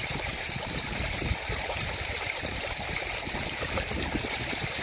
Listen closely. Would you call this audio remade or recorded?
remade